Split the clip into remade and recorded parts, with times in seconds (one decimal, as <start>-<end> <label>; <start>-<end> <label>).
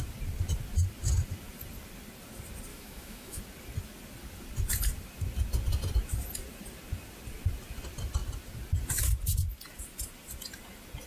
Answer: 0.0-2.7 recorded; 2.7-3.4 remade; 3.4-11.1 recorded